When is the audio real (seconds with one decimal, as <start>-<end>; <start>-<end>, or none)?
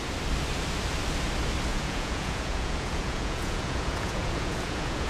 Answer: 0.0-1.7